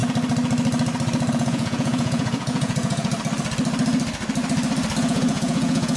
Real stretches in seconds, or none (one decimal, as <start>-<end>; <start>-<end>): 0.0-1.3; 3.1-5.0